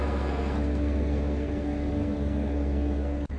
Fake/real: fake